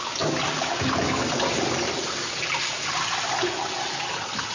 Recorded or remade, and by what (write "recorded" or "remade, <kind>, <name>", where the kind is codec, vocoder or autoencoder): recorded